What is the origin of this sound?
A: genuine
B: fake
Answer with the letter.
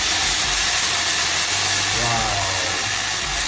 A